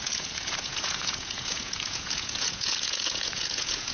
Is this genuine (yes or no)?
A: no